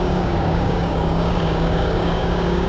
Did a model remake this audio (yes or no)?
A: yes